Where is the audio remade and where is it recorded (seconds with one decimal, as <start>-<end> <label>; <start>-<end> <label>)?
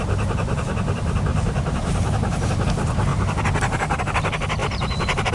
0.0-1.3 recorded; 1.3-2.5 remade; 2.5-4.6 recorded; 4.6-5.3 remade